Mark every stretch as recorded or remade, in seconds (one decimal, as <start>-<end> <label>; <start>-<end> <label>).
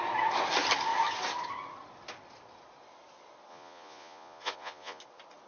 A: 0.0-3.5 recorded; 3.5-5.0 remade; 5.0-5.5 recorded